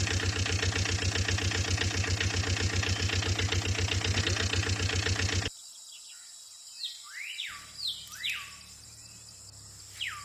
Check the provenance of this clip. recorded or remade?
recorded